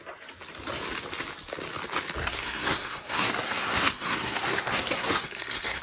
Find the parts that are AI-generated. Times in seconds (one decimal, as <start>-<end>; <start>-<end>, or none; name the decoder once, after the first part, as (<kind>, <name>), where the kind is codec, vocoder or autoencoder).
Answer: 2.2-5.8 (codec, SNAC)